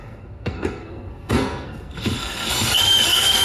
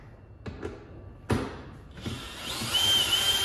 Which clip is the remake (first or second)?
first